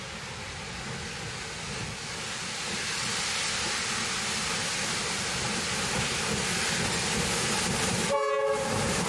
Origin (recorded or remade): recorded